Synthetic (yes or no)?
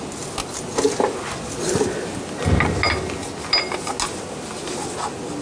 no